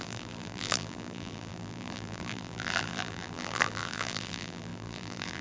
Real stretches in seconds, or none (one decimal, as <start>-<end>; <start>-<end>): none